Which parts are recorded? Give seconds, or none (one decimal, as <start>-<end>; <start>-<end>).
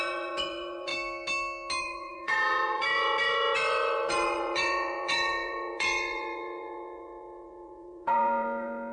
0.9-1.8